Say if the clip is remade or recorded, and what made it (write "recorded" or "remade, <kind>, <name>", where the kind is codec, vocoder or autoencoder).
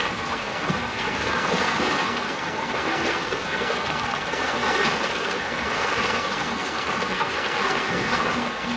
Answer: remade, codec, SNAC